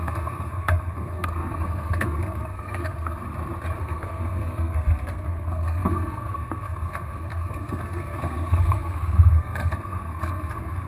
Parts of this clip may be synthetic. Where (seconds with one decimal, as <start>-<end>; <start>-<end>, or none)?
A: 0.0-3.2; 3.8-10.9